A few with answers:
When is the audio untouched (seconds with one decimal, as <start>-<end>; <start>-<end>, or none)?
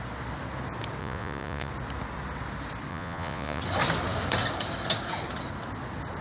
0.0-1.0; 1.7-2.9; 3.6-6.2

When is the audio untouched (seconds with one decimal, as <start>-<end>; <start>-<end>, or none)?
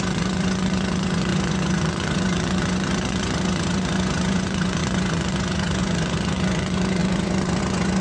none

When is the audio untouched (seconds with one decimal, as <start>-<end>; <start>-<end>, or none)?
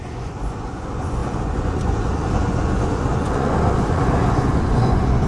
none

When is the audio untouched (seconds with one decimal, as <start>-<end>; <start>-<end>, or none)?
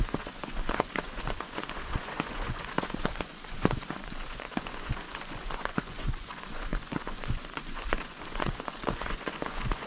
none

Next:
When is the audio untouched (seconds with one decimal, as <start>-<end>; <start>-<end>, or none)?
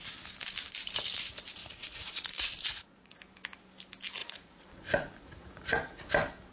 0.0-1.6; 2.3-2.7; 3.2-4.2; 6.1-6.5